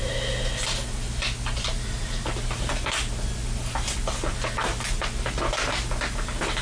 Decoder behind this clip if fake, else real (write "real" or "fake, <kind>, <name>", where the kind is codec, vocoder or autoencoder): real